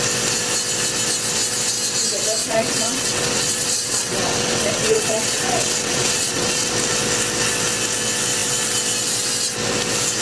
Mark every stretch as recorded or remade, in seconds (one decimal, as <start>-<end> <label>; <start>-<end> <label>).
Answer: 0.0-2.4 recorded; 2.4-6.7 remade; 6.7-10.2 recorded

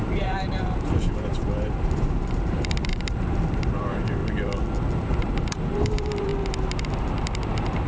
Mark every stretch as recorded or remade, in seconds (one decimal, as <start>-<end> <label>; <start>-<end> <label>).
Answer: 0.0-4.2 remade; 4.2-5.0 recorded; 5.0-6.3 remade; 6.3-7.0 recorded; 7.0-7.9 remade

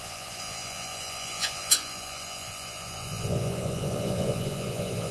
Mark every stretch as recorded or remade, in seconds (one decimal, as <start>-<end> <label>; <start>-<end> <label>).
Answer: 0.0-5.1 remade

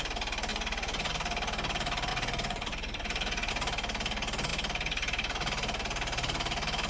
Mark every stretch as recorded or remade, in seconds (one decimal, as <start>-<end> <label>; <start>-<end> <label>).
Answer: 0.0-0.5 recorded; 0.5-1.1 remade; 1.1-2.1 recorded; 2.1-3.5 remade; 3.5-6.9 recorded